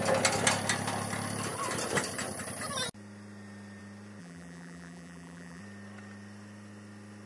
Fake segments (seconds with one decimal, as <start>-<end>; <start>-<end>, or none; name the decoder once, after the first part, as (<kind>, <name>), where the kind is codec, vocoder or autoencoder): 4.2-5.6 (vocoder, BigVGAN v2)